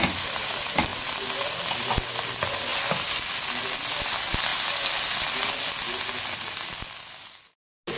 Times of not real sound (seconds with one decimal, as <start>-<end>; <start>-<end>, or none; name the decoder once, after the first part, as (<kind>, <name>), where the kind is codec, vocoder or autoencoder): none